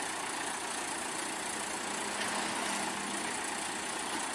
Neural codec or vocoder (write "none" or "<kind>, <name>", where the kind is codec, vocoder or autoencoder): none